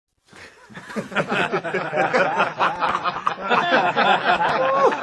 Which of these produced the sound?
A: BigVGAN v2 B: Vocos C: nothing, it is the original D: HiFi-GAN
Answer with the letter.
C